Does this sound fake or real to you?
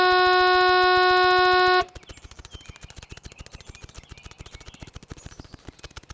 real